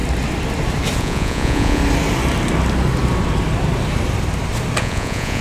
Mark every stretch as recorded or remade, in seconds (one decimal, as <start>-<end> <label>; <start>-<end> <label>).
0.0-1.0 recorded; 1.0-1.8 remade; 1.8-4.8 recorded; 4.8-5.4 remade